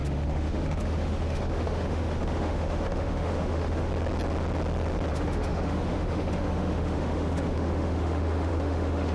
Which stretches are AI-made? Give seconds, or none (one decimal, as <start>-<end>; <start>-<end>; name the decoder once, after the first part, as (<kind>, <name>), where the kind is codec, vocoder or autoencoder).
0.0-3.9 (autoencoder, DAC-VAE); 5.1-9.1